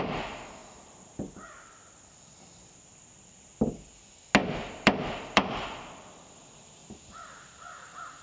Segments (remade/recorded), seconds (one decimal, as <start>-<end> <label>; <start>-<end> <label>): 0.0-0.6 recorded; 0.6-3.9 remade; 3.9-4.4 recorded; 4.4-6.3 remade; 6.3-8.2 recorded